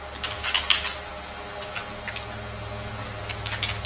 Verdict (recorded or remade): recorded